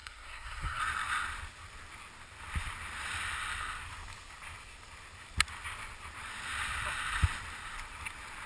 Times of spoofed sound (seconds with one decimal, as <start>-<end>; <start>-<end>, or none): 0.0-0.8